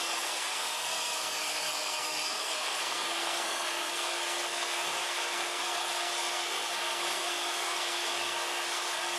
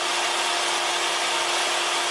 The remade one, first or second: first